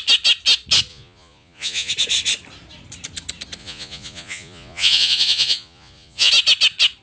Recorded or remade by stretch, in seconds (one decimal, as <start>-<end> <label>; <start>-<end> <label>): 0.0-0.9 recorded; 0.9-1.9 remade; 1.9-3.6 recorded; 3.6-6.3 remade; 6.3-7.0 recorded